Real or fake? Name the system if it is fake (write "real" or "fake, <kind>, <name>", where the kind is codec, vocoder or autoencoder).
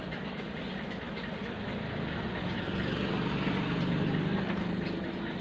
fake, vocoder, BigVGAN v2